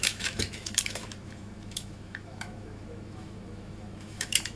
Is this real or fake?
fake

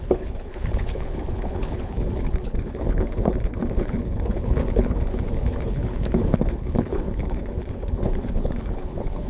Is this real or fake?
fake